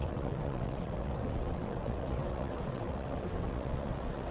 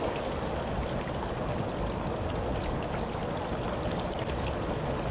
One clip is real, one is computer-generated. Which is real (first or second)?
second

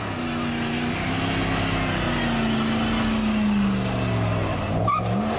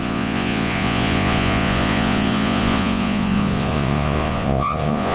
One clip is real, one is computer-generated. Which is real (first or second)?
first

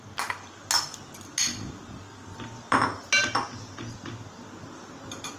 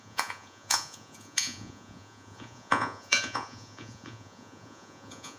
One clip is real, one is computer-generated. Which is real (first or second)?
first